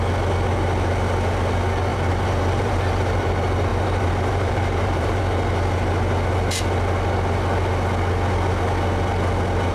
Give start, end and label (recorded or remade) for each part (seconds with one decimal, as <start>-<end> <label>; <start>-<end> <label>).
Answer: 0.0-1.9 recorded; 1.9-3.3 remade; 3.3-3.7 recorded; 3.7-5.2 remade; 5.2-9.7 recorded